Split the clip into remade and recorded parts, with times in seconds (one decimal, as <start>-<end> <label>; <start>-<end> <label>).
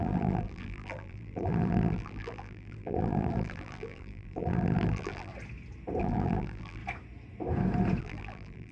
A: 0.0-5.3 remade; 5.3-6.0 recorded; 6.0-6.8 remade; 6.8-8.0 recorded; 8.0-8.7 remade